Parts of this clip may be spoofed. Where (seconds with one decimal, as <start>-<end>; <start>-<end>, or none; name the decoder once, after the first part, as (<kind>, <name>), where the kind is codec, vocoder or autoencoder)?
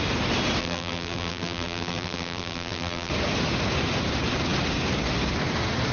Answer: 0.6-3.1 (vocoder, BigVGAN v2)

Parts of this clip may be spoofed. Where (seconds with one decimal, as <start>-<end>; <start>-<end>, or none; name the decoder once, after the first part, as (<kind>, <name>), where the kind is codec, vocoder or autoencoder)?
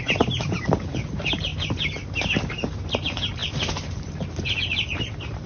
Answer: 0.0-1.5 (vocoder, BigVGAN v2); 2.5-5.5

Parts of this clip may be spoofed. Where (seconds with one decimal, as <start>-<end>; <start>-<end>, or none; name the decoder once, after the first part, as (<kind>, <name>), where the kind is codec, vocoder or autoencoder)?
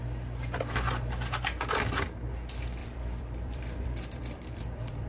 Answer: 2.8-5.1 (vocoder, BigVGAN v2)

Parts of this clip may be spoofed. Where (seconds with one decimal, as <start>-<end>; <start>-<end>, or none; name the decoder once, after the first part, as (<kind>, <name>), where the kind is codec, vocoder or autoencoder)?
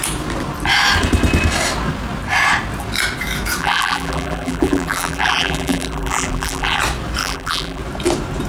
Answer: 3.6-6.8 (vocoder, BigVGAN v2); 7.2-7.8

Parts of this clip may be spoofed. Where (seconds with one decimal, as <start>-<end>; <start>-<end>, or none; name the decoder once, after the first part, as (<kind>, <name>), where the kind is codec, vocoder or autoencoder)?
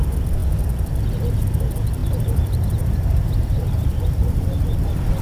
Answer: 2.0-5.2 (vocoder, BigVGAN v2)